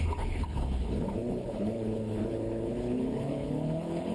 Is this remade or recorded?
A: remade